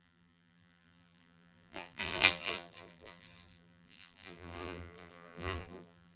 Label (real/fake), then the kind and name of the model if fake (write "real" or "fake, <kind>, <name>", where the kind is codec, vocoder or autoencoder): fake, vocoder, BigVGAN v2